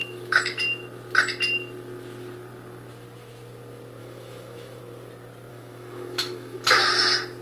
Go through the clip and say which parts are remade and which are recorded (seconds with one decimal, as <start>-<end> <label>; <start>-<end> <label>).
0.0-0.6 remade; 0.6-4.0 recorded; 4.0-4.8 remade; 4.8-5.5 recorded; 5.5-6.9 remade; 6.9-7.4 recorded